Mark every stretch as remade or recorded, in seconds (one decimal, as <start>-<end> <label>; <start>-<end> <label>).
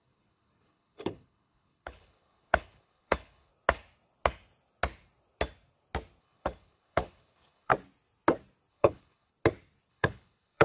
0.0-3.5 remade; 3.5-6.2 recorded; 6.2-7.7 remade; 7.7-8.7 recorded; 8.7-9.3 remade; 9.3-9.9 recorded; 9.9-10.6 remade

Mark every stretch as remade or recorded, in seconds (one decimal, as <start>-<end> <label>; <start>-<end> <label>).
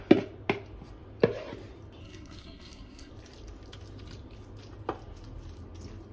0.0-2.0 recorded; 2.0-3.1 remade; 3.1-6.1 recorded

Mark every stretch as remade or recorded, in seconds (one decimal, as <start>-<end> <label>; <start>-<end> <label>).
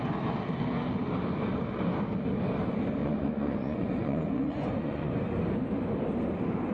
0.0-3.0 recorded; 3.0-5.1 remade; 5.1-6.7 recorded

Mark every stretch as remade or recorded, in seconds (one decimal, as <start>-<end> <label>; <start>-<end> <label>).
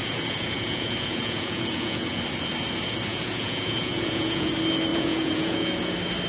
0.0-2.2 remade; 2.2-3.1 recorded; 3.1-4.5 remade; 4.5-4.9 recorded; 4.9-5.8 remade; 5.8-6.3 recorded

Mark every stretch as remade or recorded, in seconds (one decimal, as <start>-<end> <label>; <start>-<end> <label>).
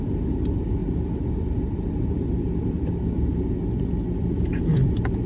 0.0-0.8 remade; 0.8-1.3 recorded; 1.3-5.3 remade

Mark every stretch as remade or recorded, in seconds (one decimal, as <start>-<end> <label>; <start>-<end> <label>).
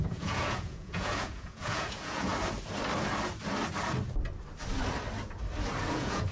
0.0-2.3 remade; 2.3-5.8 recorded; 5.8-6.3 remade